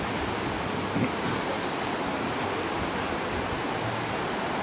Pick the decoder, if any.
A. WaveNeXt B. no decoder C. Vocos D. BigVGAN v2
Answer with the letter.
B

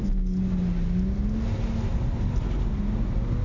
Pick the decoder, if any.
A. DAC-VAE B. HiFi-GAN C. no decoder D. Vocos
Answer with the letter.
C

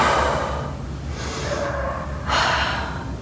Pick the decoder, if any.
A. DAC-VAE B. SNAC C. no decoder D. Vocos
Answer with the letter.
C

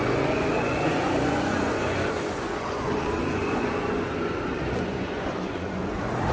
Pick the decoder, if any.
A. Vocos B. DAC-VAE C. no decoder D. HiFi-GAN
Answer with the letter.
A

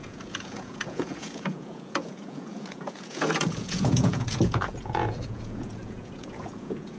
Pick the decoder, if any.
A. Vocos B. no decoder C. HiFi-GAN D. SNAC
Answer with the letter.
A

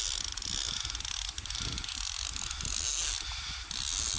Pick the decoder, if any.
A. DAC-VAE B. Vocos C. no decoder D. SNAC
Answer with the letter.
C